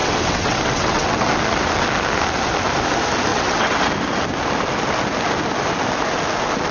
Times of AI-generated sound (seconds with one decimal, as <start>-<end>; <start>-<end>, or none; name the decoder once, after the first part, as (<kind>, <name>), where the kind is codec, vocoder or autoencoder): 0.0-1.3 (vocoder, WaveNeXt); 3.3-3.8